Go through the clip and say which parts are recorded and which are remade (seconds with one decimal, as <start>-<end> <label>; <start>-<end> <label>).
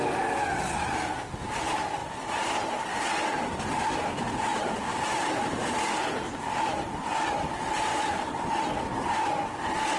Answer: 0.0-4.5 recorded; 4.5-7.0 remade; 7.0-10.0 recorded